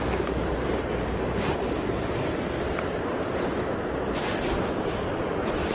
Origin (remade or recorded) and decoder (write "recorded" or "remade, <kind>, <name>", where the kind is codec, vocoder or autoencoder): recorded